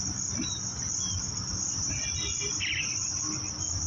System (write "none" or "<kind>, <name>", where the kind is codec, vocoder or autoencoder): vocoder, BigVGAN v2